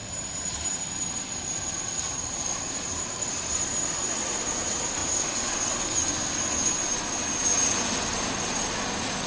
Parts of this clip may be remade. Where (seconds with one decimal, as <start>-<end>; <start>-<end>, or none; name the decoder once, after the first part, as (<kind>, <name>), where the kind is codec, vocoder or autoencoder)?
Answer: 0.0-5.0 (vocoder, BigVGAN v2)